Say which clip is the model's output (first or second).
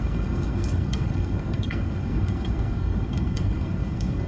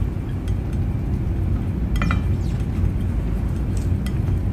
first